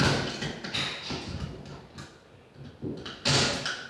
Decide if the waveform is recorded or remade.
recorded